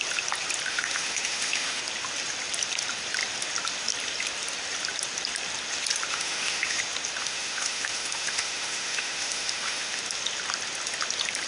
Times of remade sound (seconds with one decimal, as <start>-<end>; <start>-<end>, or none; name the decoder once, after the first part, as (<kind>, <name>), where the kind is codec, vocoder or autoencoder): 0.7-1.8 (autoencoder, DAC-VAE); 6.1-6.8; 7.2-10.0